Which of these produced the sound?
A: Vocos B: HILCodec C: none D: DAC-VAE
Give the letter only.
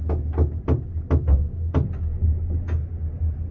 C